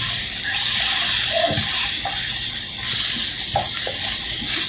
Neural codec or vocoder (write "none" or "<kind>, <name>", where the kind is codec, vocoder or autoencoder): none